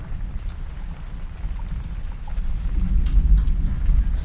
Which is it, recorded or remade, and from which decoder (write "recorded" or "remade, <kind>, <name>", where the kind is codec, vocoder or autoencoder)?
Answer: recorded